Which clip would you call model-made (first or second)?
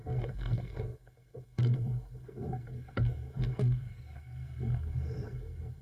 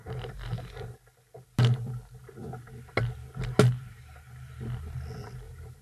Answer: first